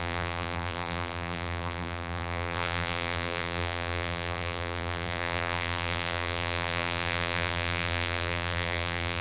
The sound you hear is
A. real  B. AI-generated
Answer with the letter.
B